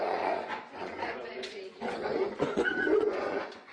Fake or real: fake